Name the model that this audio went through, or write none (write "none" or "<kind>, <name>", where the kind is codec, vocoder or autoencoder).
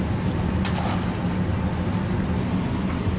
none